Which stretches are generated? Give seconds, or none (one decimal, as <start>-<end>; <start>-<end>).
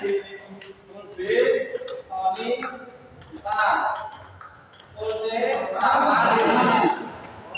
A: 0.0-0.7; 3.8-4.8